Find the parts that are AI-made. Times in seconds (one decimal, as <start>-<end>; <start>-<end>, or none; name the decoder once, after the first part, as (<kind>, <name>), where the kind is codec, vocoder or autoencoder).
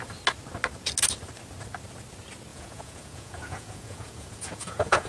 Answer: 2.5-5.1 (vocoder, Vocos)